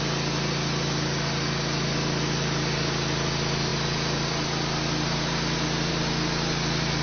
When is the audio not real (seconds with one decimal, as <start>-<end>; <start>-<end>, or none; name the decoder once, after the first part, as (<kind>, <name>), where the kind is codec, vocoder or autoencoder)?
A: none